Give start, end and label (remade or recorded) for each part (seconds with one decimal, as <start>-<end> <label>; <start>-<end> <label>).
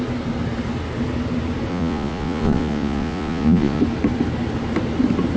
0.0-1.7 recorded; 1.7-3.8 remade; 3.8-5.4 recorded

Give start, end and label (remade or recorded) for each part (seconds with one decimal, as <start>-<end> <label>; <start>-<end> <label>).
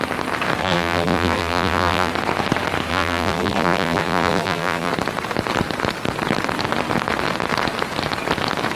0.0-0.6 recorded; 0.6-2.1 remade; 2.1-2.9 recorded; 2.9-4.9 remade; 4.9-8.8 recorded